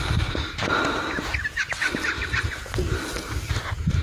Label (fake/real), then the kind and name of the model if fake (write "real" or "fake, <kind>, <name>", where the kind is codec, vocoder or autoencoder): real